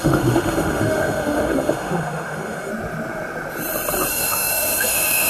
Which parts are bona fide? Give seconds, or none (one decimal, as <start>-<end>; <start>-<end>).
2.7-4.1